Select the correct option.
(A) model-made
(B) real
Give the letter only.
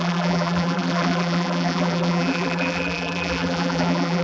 A